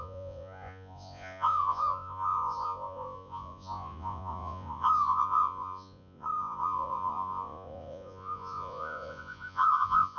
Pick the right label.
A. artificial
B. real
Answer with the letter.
A